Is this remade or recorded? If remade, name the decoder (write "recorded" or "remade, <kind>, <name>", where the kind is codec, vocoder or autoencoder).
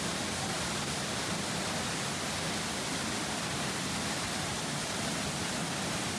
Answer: recorded